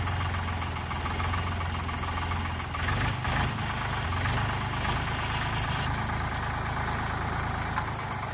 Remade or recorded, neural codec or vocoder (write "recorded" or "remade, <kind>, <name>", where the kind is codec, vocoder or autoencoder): recorded